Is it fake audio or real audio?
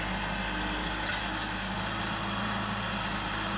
real